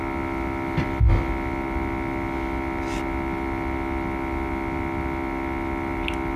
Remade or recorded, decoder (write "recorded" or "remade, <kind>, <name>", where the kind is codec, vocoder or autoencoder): recorded